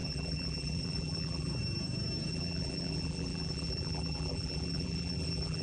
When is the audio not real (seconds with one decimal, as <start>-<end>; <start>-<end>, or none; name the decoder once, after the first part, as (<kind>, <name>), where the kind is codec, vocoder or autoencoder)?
0.0-1.5 (vocoder, BigVGAN v2); 2.3-5.6